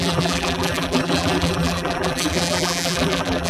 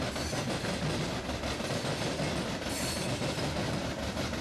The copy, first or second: first